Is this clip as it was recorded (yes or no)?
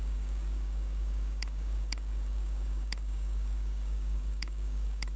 no